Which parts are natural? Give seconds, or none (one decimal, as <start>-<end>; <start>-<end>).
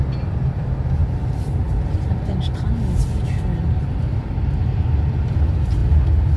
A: 0.0-6.4